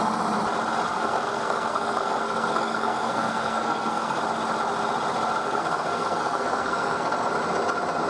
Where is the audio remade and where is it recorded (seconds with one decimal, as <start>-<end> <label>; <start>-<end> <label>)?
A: 0.0-0.9 recorded; 0.9-4.2 remade; 4.2-5.4 recorded; 5.4-7.3 remade; 7.3-8.1 recorded